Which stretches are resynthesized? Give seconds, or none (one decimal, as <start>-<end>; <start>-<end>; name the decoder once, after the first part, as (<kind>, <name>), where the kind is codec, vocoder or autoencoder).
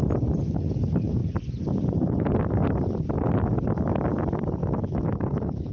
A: 4.6-5.7 (autoencoder, DAC-VAE)